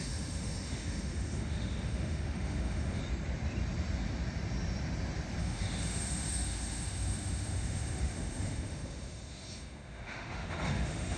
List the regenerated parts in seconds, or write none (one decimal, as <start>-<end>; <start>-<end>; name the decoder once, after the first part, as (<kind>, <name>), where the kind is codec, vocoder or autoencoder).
0.0-3.0 (autoencoder, DAC-VAE); 5.4-11.2